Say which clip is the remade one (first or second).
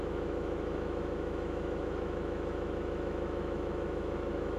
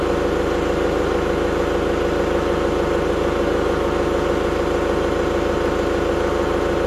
first